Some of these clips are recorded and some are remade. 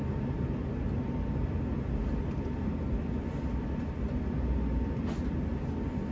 recorded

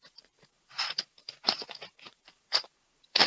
remade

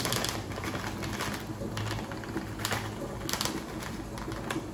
recorded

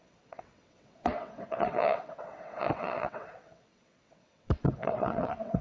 remade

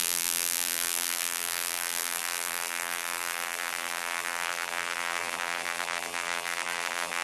remade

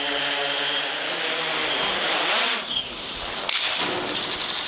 recorded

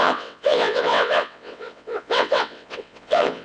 remade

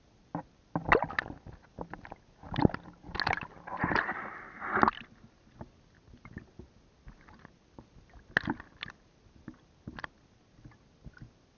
recorded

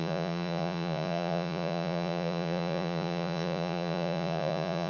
remade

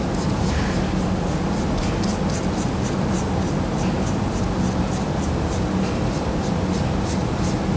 recorded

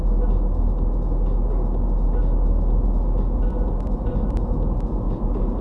recorded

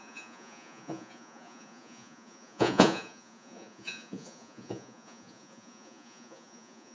remade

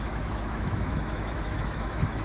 remade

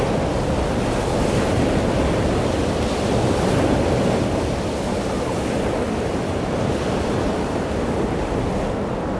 recorded